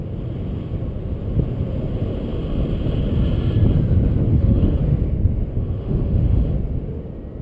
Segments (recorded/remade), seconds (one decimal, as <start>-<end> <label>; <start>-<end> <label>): 0.0-4.3 recorded; 4.3-4.8 remade; 4.8-5.5 recorded; 5.5-6.5 remade; 6.5-7.4 recorded